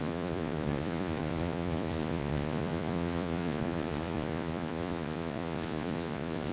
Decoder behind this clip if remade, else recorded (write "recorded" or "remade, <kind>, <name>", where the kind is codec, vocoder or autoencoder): remade, vocoder, Vocos